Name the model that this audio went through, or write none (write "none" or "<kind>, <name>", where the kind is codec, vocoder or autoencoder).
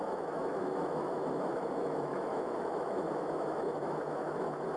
autoencoder, DAC-VAE